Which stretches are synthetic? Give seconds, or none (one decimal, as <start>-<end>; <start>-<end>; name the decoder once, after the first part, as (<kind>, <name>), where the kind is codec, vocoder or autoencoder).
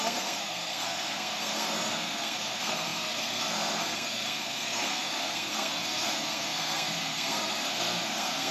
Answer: 0.0-8.5 (codec, SNAC)